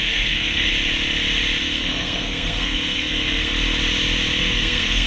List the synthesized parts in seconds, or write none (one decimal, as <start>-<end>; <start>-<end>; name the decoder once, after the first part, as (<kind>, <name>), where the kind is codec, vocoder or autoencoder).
0.0-0.7 (codec, SNAC); 1.6-3.5; 4.4-5.1